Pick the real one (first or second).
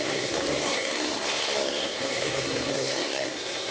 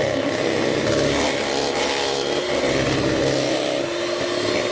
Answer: second